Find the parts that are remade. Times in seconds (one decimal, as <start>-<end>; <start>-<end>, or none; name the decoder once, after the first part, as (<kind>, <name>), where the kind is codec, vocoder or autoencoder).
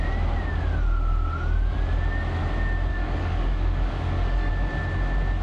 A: 2.9-4.5 (codec, DAC)